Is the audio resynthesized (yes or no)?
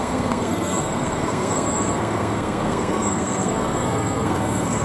yes